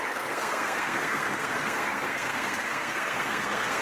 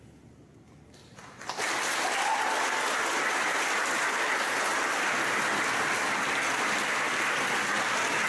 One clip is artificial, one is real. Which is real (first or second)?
second